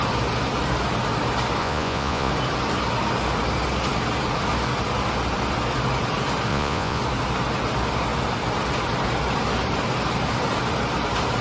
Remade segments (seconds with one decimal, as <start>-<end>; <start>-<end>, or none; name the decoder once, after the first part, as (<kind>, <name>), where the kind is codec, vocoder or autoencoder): 1.6-2.3 (vocoder, Vocos); 6.5-7.0